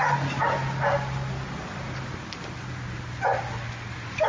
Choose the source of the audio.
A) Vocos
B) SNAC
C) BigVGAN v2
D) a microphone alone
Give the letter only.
D